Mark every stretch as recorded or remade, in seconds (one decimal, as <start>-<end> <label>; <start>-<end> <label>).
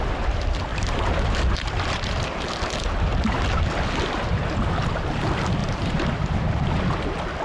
0.0-0.7 recorded; 0.7-2.5 remade; 2.5-5.6 recorded; 5.6-6.3 remade; 6.3-7.4 recorded